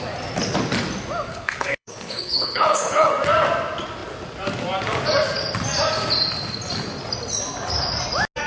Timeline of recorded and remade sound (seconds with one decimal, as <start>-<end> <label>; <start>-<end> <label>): 0.0-1.3 recorded; 1.3-3.1 remade; 3.1-8.5 recorded